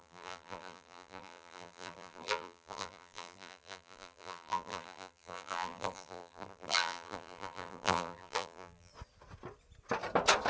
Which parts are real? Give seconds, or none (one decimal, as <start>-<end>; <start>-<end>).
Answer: 8.9-10.5